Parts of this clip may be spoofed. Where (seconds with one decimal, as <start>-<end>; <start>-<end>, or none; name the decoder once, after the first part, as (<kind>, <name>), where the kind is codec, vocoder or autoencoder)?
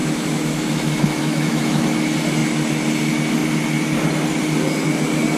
0.0-1.8 (autoencoder, DAC-VAE)